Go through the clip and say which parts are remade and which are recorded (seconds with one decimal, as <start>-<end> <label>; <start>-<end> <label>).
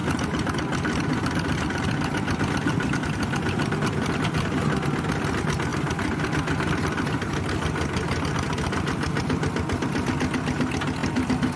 0.0-4.4 remade; 4.4-5.7 recorded; 5.7-6.3 remade; 6.3-11.6 recorded